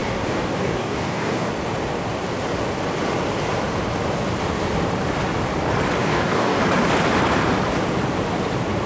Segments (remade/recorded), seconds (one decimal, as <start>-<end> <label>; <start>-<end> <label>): 0.0-1.5 remade; 1.5-6.0 recorded; 6.0-6.6 remade; 6.6-8.9 recorded